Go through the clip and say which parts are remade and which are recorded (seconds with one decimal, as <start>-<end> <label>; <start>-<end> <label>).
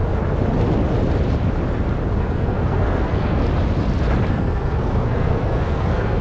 0.0-2.2 recorded; 2.2-3.4 remade; 3.4-4.3 recorded; 4.3-6.2 remade